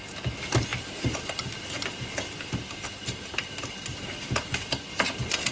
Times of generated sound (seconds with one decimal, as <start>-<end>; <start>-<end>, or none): none